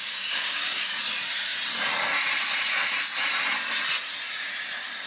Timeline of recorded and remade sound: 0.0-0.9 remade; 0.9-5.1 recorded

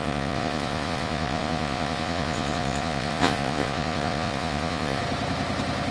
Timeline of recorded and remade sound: 0.0-5.0 remade; 5.0-5.9 recorded

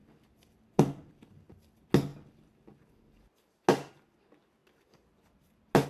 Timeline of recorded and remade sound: 0.0-5.9 recorded

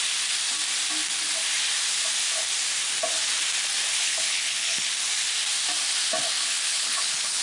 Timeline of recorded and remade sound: 0.0-4.0 recorded; 4.0-4.9 remade; 4.9-6.4 recorded; 6.4-7.4 remade